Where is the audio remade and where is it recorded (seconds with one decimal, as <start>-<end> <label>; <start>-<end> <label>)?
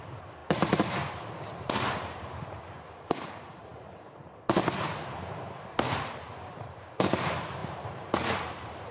0.0-8.9 remade